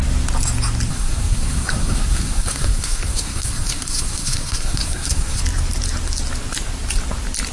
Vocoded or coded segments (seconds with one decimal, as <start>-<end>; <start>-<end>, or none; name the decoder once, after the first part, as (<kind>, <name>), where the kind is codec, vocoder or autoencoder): 0.9-5.4 (codec, SNAC)